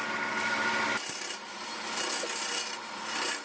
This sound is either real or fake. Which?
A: real